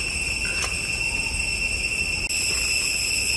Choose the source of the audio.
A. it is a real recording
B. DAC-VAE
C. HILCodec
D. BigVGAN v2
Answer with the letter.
A